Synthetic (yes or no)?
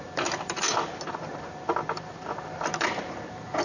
no